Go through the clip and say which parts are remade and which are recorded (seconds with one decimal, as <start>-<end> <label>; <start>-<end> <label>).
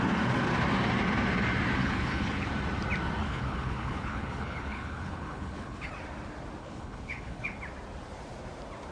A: 0.0-1.8 recorded; 1.8-2.5 remade; 2.5-3.2 recorded; 3.2-5.9 remade; 5.9-6.6 recorded; 6.6-7.6 remade; 7.6-8.9 recorded